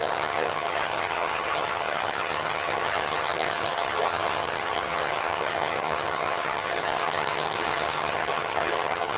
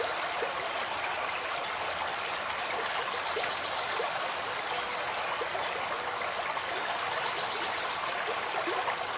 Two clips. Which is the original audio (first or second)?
second